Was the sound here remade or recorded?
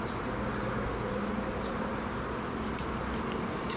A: recorded